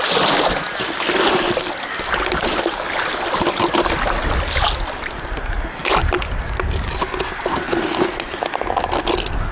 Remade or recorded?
recorded